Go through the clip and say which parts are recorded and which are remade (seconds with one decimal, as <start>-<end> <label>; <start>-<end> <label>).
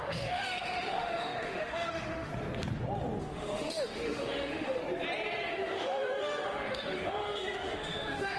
0.0-2.3 remade; 2.3-3.2 recorded; 3.2-4.8 remade; 4.8-5.5 recorded; 5.5-8.4 remade